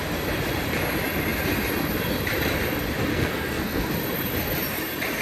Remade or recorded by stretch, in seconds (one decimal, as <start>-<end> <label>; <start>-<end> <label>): 0.0-3.1 recorded; 3.1-3.9 remade; 3.9-5.2 recorded